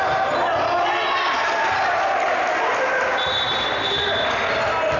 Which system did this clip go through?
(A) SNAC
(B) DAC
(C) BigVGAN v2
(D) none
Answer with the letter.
D